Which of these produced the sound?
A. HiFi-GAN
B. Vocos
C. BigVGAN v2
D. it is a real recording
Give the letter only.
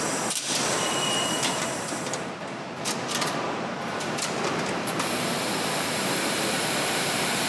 C